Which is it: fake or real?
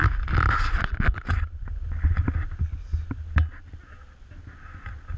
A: real